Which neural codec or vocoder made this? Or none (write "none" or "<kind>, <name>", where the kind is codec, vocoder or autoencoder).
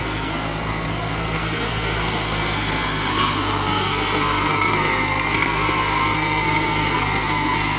codec, SNAC